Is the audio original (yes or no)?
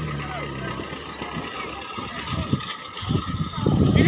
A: yes